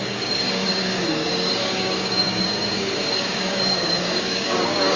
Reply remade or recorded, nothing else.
remade